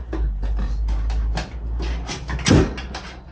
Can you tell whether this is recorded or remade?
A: recorded